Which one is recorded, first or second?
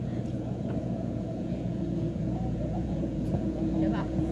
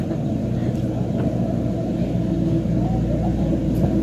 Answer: second